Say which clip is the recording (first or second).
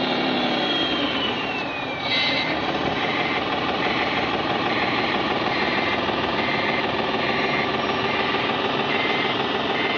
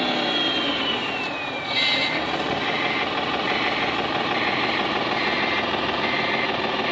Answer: second